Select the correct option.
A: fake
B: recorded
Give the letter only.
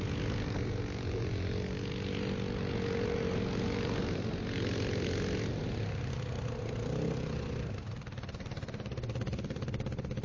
B